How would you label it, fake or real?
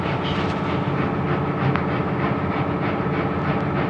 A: real